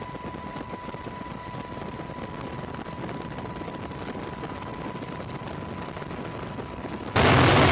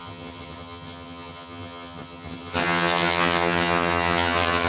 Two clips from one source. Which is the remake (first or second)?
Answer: second